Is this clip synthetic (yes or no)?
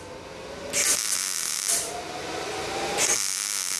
no